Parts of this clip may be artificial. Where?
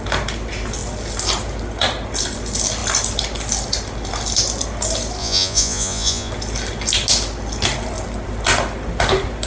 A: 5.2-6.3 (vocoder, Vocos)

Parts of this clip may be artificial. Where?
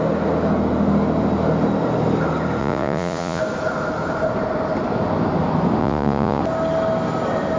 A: 2.6-3.4 (vocoder, Vocos); 5.8-6.4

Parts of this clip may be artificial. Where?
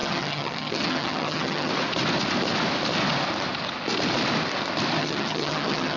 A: 0.0-1.7 (vocoder, HiFi-GAN); 5.0-6.0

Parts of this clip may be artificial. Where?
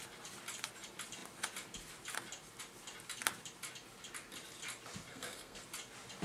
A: 5.1-5.6 (codec, SNAC)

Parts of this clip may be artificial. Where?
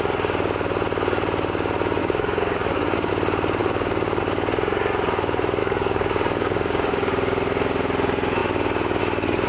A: 2.0-3.1 (codec, DAC); 3.6-4.2; 5.6-7.1